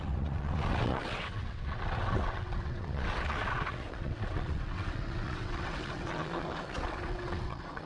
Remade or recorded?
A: remade